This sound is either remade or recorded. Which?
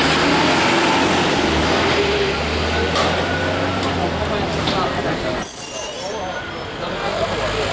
recorded